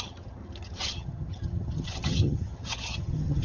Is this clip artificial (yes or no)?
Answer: yes